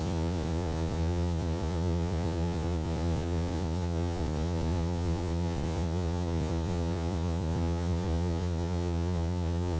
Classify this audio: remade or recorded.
remade